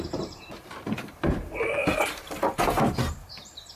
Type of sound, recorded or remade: remade